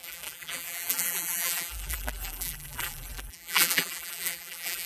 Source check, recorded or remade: remade